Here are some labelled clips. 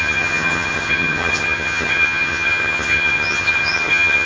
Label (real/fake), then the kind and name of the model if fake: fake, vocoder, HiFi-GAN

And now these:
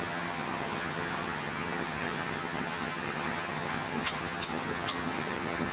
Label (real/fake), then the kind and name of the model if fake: fake, vocoder, HiFi-GAN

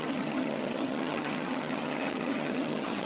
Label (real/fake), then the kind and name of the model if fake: fake, vocoder, HiFi-GAN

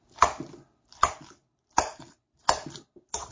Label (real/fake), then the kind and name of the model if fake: real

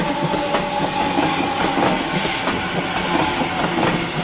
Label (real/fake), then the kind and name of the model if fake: real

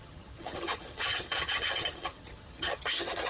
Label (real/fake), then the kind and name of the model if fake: fake, vocoder, HiFi-GAN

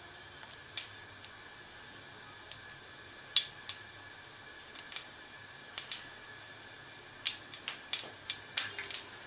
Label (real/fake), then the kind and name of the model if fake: real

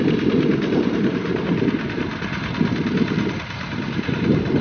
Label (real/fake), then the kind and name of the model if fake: real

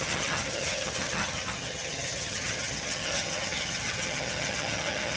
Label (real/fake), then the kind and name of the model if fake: fake, vocoder, HiFi-GAN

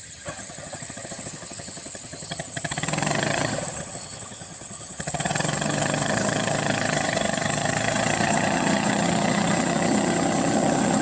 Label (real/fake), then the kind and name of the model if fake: fake, vocoder, HiFi-GAN